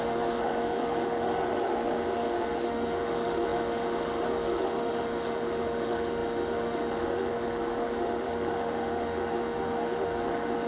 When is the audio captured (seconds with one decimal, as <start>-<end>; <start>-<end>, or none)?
none